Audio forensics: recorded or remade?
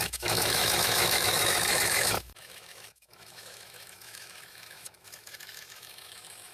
remade